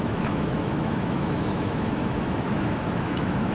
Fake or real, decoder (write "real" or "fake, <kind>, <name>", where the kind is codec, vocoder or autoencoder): fake, autoencoder, DAC-VAE